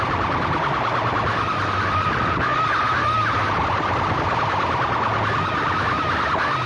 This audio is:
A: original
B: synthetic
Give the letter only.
A